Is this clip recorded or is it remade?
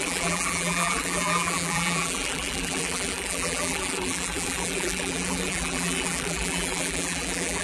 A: remade